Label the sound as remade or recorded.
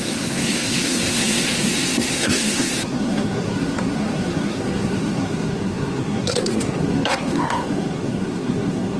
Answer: remade